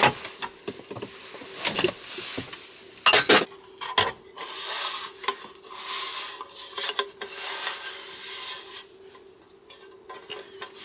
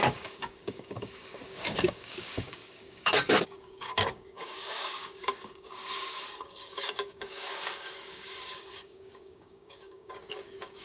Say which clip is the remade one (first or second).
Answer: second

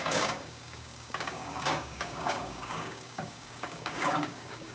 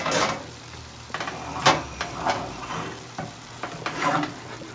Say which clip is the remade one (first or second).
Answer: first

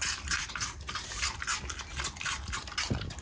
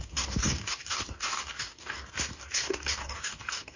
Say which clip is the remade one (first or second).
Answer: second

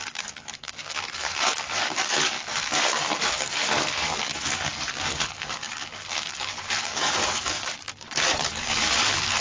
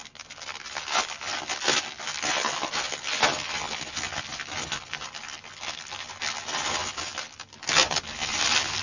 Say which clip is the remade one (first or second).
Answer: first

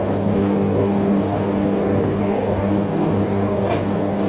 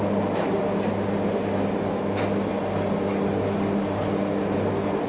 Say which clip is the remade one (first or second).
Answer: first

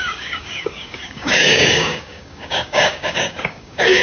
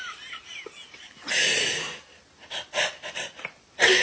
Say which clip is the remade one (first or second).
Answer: first